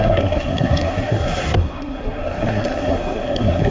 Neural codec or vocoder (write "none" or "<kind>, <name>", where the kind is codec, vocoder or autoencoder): codec, SNAC